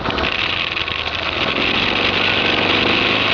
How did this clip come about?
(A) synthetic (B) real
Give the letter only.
B